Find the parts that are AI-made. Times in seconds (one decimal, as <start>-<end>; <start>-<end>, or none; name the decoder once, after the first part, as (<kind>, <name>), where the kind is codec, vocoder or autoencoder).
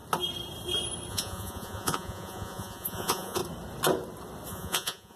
1.1-3.4 (vocoder, Vocos); 4.5-5.2